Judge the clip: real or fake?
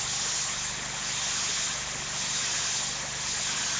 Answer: real